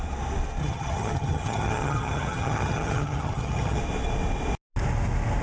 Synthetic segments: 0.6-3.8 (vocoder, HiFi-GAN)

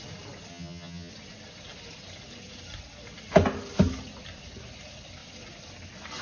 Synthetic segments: 0.5-1.1 (vocoder, HiFi-GAN)

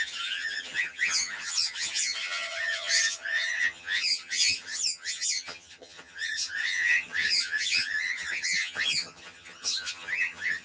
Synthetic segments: 0.0-10.6 (vocoder, HiFi-GAN)

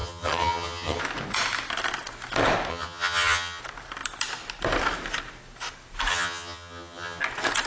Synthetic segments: 0.0-1.0 (vocoder, HiFi-GAN); 2.7-3.6; 6.1-7.2

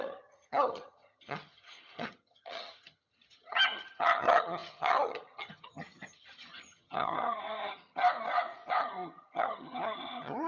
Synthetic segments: 0.0-8.0 (vocoder, HiFi-GAN); 8.8-10.5

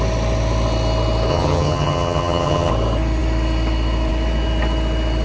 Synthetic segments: 1.3-2.7 (vocoder, HiFi-GAN)